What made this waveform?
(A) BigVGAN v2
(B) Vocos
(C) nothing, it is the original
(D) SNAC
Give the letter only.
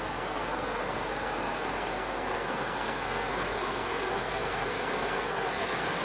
D